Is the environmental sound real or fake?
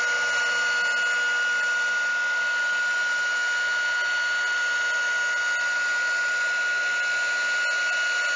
real